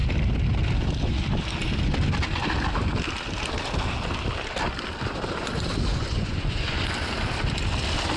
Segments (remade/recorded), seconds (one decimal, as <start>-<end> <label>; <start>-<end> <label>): 0.0-5.9 recorded; 5.9-6.8 remade; 6.8-8.2 recorded